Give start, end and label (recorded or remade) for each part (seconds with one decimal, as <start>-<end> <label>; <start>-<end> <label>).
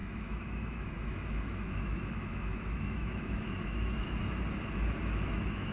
0.0-4.2 remade; 4.2-5.0 recorded; 5.0-5.7 remade